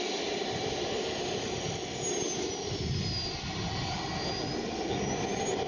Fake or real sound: real